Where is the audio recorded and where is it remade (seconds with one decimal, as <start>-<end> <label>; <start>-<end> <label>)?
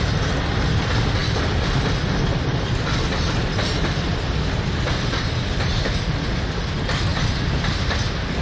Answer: 0.0-8.4 recorded